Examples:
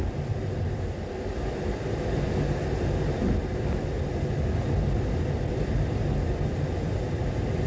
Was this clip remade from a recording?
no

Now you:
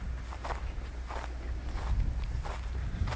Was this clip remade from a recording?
no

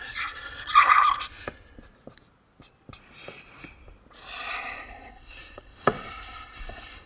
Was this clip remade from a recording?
no